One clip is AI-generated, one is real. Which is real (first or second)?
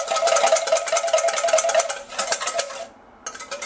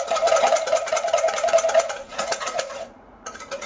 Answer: first